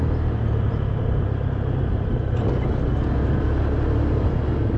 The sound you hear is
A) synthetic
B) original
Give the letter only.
B